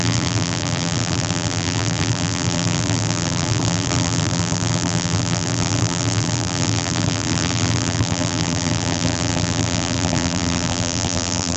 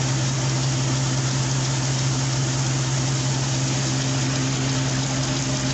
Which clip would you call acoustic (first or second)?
second